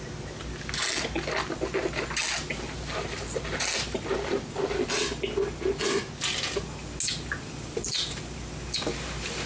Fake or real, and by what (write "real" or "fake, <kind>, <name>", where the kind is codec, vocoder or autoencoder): real